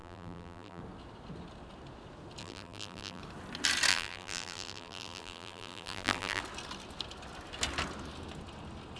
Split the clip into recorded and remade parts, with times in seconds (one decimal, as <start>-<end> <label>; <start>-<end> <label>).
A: 0.0-0.8 remade; 0.8-2.4 recorded; 2.4-3.2 remade; 3.2-3.9 recorded; 3.9-6.4 remade; 6.4-9.0 recorded